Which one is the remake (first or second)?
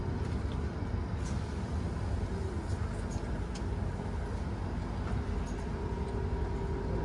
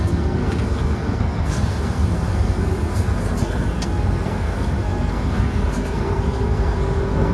second